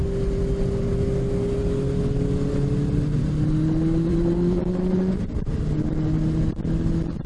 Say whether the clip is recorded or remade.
recorded